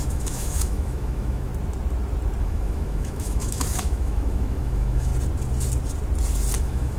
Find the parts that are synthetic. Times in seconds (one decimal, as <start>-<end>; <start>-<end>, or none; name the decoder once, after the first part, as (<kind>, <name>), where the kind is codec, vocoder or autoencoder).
0.0-1.5 (autoencoder, DAC-VAE); 2.4-5.1; 6.6-7.0